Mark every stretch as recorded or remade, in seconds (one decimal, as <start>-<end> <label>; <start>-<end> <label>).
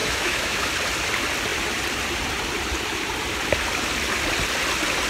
0.0-0.7 remade; 0.7-5.1 recorded